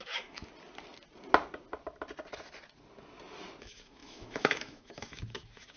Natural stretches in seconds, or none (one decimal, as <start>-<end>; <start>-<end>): 0.5-3.6